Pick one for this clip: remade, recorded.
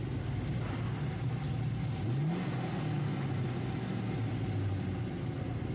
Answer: recorded